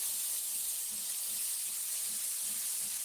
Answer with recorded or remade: remade